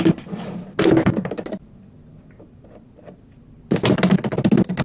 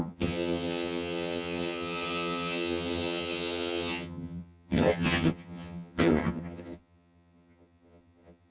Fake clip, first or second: second